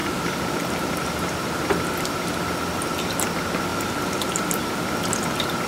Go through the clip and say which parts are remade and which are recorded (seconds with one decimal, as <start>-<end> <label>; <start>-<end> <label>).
0.0-5.7 recorded